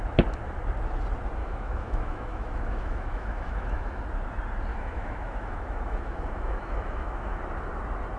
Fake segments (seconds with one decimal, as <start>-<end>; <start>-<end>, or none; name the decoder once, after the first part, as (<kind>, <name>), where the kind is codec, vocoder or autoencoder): 1.4-4.0 (autoencoder, DAC-VAE); 4.7-7.4